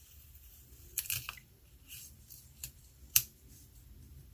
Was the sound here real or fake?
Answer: fake